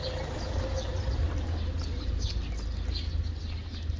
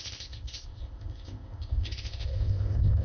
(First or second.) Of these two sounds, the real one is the first